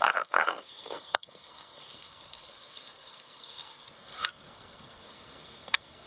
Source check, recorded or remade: remade